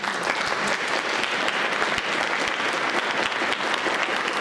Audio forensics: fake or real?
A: real